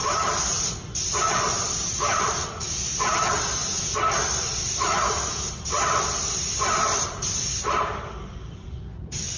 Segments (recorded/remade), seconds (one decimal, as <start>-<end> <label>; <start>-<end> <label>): 0.0-3.2 recorded; 3.2-3.6 remade; 3.6-4.9 recorded; 4.9-9.4 remade